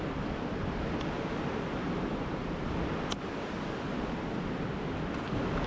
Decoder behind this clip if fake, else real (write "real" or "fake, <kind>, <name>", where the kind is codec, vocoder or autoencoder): real